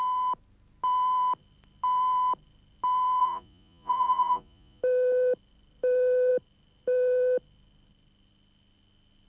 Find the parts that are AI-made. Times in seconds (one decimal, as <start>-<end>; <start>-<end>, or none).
3.2-4.8